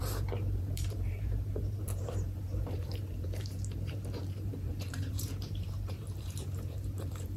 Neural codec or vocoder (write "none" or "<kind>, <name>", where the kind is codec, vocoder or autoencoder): vocoder, BigVGAN v2